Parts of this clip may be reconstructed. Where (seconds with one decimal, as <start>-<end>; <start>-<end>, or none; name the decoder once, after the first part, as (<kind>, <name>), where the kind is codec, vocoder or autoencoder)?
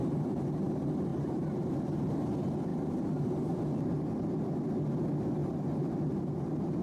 0.0-0.7 (vocoder, BigVGAN v2); 1.1-2.0; 2.7-3.6; 5.4-6.8